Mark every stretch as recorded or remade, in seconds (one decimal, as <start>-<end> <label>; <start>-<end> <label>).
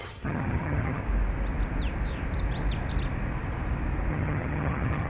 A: 0.0-1.0 remade; 1.0-4.1 recorded; 4.1-5.1 remade